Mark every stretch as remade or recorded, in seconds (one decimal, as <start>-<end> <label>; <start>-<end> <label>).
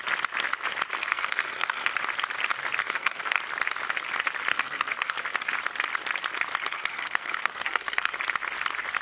0.0-1.0 recorded; 1.0-1.9 remade; 1.9-2.8 recorded; 2.8-3.4 remade; 3.4-4.5 recorded; 4.5-5.2 remade; 5.2-6.7 recorded; 6.7-8.1 remade; 8.1-9.0 recorded